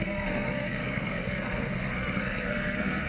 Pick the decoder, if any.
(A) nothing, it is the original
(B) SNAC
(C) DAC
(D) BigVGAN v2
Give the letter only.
B